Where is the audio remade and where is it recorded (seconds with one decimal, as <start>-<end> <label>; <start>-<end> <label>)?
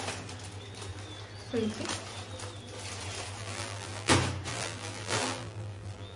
0.0-3.4 recorded; 3.4-4.1 remade; 4.1-4.5 recorded; 4.5-6.2 remade